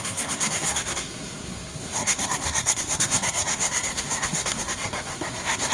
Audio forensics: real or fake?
fake